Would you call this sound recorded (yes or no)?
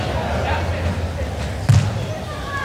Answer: yes